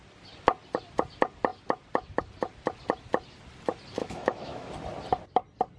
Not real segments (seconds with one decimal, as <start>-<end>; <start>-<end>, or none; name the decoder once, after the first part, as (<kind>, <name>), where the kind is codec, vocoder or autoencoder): 4.0-4.7 (autoencoder, DAC-VAE)